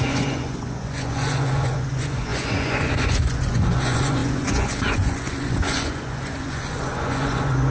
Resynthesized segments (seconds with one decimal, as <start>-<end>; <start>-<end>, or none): 0.0-7.7